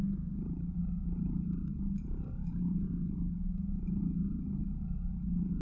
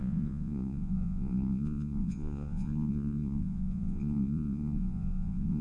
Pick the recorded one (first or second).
first